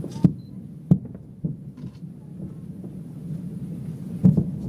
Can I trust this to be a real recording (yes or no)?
yes